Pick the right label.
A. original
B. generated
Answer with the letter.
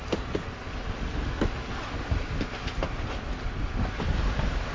A